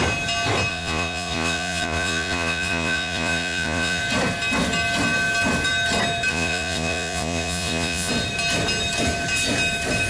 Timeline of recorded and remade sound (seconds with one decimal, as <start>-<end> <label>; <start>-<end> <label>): 0.0-0.7 recorded; 0.7-4.0 remade; 4.0-6.3 recorded; 6.3-8.1 remade; 8.1-10.1 recorded

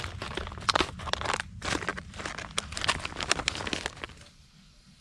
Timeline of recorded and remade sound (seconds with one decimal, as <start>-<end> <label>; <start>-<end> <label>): 0.0-5.0 recorded

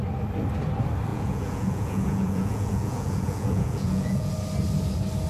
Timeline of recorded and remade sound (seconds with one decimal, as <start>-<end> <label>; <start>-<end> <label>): 0.0-1.1 recorded; 1.1-4.3 remade; 4.3-5.3 recorded

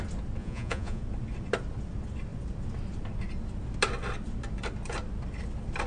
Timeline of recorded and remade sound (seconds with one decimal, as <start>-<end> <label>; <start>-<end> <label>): 0.0-0.4 recorded; 0.4-1.0 remade; 1.0-5.9 recorded